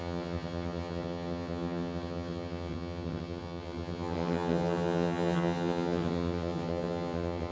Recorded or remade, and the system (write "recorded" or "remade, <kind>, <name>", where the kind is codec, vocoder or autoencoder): remade, vocoder, HiFi-GAN